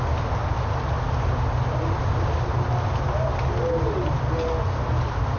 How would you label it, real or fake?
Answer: real